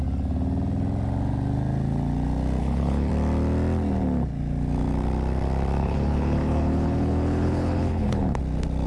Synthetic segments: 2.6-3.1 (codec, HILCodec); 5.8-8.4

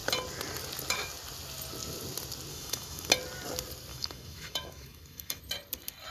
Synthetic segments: 2.5-3.1 (autoencoder, DAC-VAE); 3.9-5.4

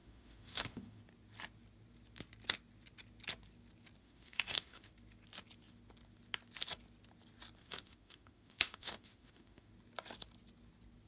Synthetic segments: 0.0-1.0 (autoencoder, DAC-VAE); 4.0-4.9; 7.6-9.7

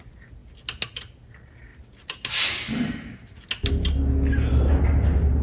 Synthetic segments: none